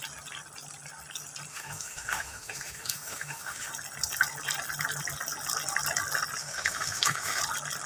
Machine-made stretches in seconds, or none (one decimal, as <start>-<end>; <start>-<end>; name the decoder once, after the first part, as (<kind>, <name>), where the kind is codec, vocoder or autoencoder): 1.5-3.7 (autoencoder, DAC-VAE); 6.4-7.4